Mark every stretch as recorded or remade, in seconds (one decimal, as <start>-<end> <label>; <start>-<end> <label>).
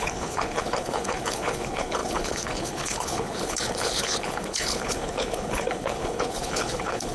0.0-7.1 remade